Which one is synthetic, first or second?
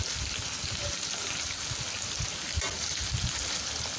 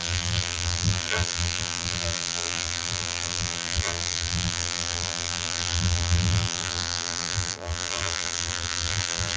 second